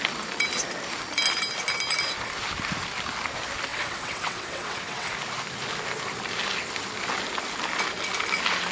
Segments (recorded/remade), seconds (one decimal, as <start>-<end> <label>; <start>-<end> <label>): 0.0-3.7 recorded; 3.7-5.1 remade; 5.1-8.7 recorded